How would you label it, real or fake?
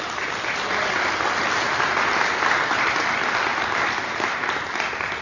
real